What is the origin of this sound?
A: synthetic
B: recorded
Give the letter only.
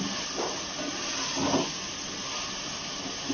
B